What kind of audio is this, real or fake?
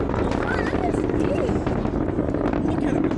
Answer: fake